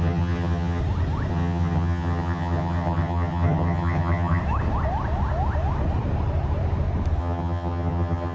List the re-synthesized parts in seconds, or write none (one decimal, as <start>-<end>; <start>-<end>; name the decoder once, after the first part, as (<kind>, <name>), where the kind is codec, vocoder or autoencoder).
0.0-0.8 (vocoder, HiFi-GAN); 1.3-4.4; 7.2-8.3